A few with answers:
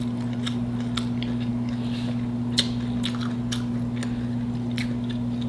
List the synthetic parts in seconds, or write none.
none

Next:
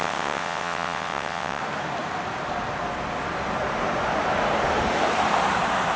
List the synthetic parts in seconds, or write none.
0.0-1.6